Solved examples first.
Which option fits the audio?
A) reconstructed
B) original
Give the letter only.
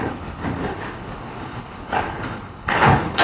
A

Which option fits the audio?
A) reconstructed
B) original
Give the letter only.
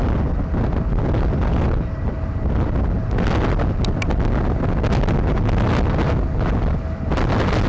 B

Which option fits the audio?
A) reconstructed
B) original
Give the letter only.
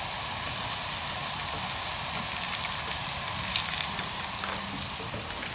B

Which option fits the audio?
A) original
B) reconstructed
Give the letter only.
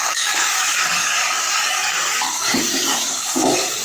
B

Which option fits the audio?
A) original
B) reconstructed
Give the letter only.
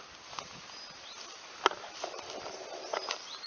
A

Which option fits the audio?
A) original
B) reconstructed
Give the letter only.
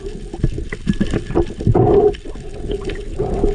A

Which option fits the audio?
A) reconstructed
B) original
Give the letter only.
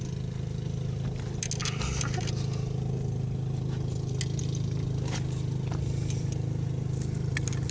B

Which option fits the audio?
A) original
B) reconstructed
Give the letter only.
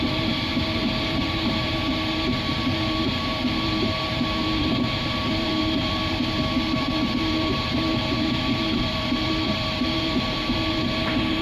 B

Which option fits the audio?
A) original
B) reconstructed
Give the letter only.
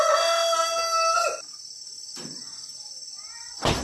A